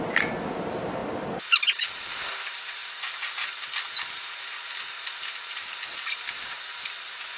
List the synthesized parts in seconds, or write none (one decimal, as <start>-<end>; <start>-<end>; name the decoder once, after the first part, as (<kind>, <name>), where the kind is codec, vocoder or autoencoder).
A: none